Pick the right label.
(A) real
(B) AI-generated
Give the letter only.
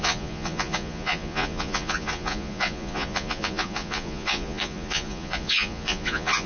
B